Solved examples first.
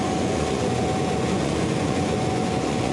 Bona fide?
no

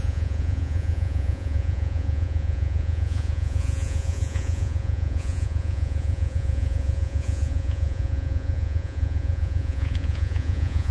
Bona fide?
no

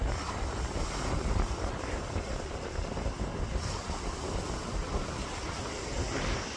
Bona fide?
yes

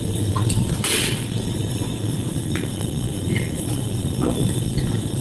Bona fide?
no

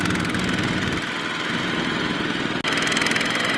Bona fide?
yes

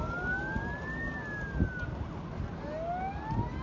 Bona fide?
yes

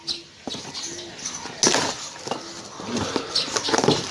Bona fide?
yes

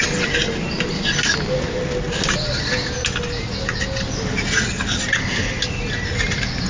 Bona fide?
yes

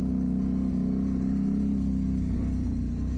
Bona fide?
yes